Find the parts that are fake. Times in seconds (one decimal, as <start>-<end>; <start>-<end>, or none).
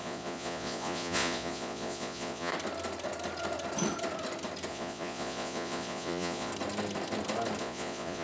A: 0.0-2.5; 4.7-6.5; 7.6-8.2